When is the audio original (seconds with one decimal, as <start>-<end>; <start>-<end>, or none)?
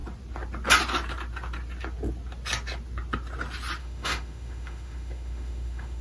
0.0-3.8